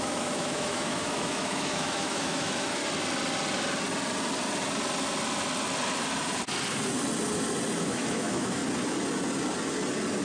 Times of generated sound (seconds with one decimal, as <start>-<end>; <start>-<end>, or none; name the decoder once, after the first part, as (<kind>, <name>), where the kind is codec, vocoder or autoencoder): 0.0-2.8 (autoencoder, DAC-VAE); 7.8-8.6